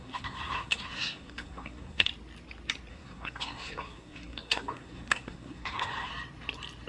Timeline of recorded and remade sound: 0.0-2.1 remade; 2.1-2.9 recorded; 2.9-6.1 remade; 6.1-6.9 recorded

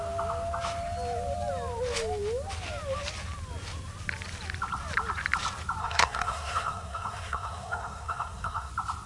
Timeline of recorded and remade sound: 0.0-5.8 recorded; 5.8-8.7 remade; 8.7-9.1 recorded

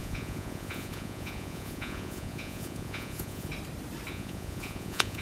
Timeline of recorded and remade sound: 0.0-3.5 remade; 3.5-4.1 recorded; 4.1-5.2 remade

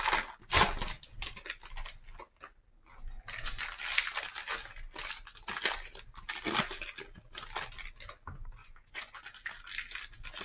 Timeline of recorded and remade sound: 0.0-8.6 recorded; 8.6-9.2 remade; 9.2-10.4 recorded

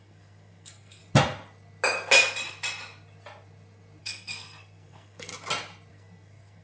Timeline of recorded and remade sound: 0.0-1.0 remade; 1.0-4.0 recorded; 4.0-5.3 remade; 5.3-5.9 recorded; 5.9-6.6 remade